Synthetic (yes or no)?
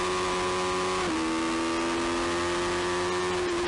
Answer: no